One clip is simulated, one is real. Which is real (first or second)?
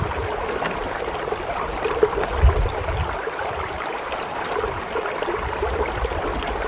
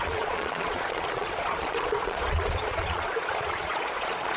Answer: first